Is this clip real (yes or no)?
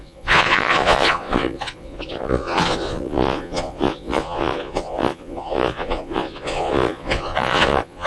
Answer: no